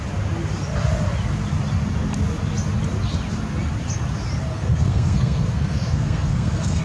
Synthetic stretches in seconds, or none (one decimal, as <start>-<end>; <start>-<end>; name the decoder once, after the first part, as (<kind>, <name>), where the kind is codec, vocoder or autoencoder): 4.5-6.8 (codec, SNAC)